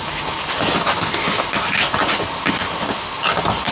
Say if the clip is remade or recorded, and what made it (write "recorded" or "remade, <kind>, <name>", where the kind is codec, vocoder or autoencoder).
recorded